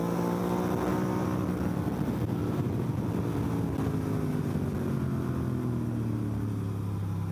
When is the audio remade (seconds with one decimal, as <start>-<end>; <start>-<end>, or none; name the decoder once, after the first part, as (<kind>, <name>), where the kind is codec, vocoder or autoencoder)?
none